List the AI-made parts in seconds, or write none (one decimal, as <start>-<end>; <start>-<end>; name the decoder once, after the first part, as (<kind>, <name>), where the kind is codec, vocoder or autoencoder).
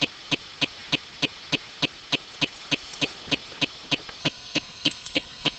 4.2-5.6 (codec, SNAC)